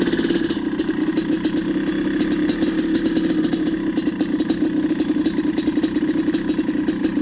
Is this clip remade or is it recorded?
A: recorded